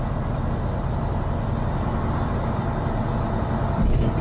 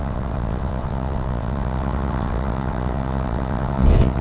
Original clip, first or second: first